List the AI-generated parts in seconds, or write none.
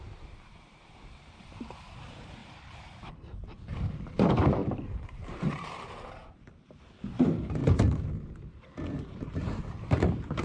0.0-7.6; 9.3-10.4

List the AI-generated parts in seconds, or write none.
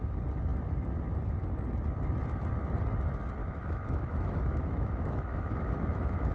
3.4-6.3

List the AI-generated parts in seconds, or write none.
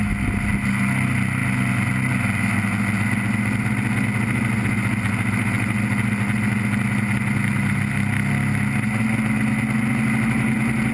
none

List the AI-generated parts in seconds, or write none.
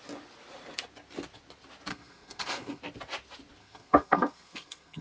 1.9-2.8; 3.6-5.0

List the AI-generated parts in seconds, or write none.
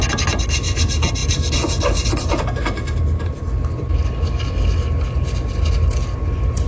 none